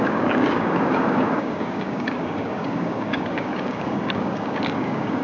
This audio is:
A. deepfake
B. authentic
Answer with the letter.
A